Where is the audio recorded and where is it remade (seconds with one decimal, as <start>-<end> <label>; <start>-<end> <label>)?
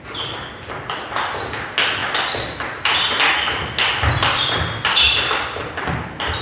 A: 0.0-6.4 recorded